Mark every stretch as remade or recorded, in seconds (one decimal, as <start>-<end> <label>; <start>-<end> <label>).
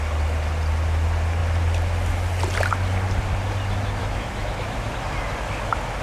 0.0-4.0 recorded; 4.0-4.9 remade; 4.9-6.0 recorded